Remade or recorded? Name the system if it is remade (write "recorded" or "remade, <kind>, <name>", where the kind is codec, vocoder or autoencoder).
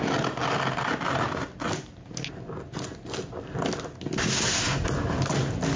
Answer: recorded